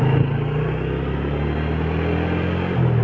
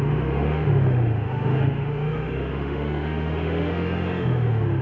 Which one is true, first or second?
first